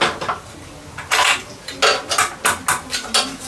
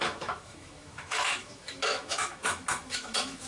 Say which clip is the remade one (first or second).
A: second